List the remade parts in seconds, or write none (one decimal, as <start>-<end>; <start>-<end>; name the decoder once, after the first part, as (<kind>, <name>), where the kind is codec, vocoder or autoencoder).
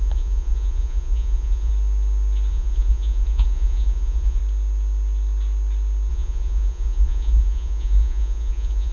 0.0-1.7 (vocoder, Vocos); 2.5-4.4; 6.1-8.9